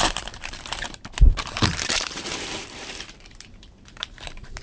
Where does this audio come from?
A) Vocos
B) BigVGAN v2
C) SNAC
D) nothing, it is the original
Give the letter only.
B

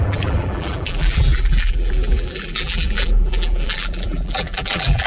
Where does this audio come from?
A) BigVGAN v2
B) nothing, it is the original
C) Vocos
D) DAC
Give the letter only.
A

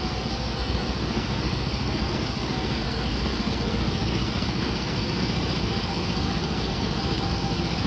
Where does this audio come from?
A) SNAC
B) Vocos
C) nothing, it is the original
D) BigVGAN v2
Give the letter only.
A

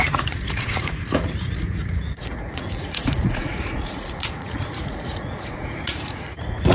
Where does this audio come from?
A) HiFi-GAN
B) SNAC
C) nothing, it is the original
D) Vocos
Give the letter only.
D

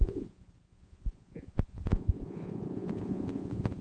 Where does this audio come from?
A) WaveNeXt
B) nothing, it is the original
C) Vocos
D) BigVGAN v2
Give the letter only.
C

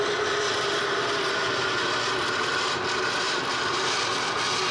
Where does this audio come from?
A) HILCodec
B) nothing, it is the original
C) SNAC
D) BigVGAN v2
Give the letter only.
B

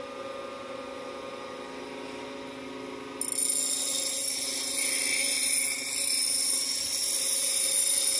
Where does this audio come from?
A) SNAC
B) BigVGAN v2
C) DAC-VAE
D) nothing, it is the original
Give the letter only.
D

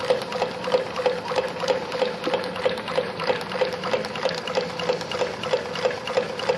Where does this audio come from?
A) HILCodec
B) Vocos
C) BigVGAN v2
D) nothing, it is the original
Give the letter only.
D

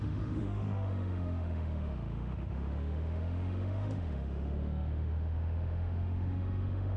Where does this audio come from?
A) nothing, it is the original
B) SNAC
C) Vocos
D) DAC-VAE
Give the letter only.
D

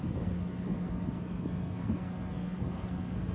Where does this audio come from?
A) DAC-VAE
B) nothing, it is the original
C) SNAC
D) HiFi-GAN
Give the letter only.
C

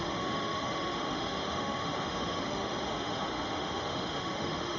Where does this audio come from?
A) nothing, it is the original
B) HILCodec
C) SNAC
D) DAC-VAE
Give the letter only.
D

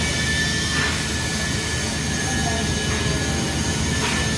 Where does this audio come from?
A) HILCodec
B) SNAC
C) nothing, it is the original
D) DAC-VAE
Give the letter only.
C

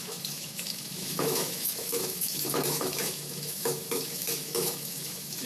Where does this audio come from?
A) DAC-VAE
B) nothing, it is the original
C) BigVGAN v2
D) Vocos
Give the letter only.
A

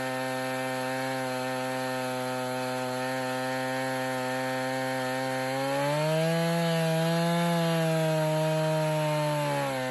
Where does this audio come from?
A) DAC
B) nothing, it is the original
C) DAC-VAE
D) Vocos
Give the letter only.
B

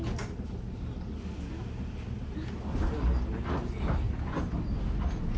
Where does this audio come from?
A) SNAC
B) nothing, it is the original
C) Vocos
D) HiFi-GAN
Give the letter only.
B